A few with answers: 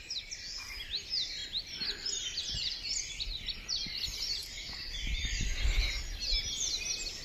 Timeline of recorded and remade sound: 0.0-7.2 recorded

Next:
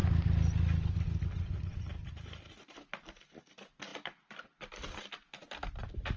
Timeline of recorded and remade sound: 0.0-6.2 recorded

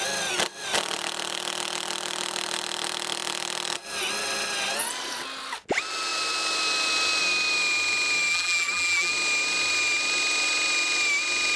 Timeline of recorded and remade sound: 0.0-8.3 recorded; 8.3-9.1 remade; 9.1-11.6 recorded

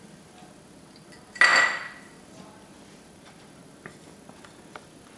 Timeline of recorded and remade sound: 0.0-1.5 recorded; 1.5-3.6 remade; 3.6-5.2 recorded

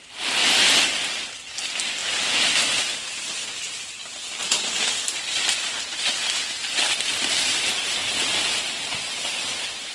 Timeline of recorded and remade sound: 0.0-0.4 remade; 0.4-1.3 recorded; 1.3-4.4 remade; 4.4-8.6 recorded; 8.6-9.9 remade

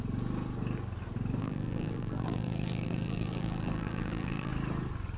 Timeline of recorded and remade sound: 0.0-1.4 recorded; 1.4-4.5 remade; 4.5-5.2 recorded